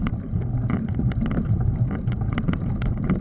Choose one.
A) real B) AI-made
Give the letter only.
A